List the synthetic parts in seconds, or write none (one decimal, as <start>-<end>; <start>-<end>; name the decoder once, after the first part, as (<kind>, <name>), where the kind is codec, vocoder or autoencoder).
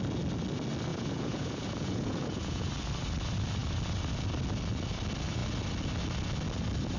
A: 0.9-2.7 (vocoder, Vocos)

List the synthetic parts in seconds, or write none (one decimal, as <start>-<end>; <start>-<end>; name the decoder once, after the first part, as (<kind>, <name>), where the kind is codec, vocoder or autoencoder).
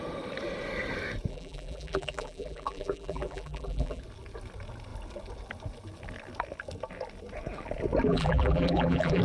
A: 1.3-4.0 (vocoder, BigVGAN v2); 8.1-9.2